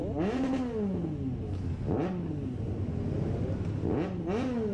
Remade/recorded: recorded